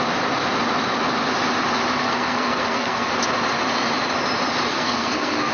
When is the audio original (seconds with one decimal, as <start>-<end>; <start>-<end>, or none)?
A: 0.0-2.0; 3.1-4.7